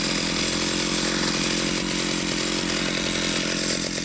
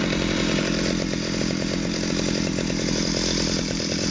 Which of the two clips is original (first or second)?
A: first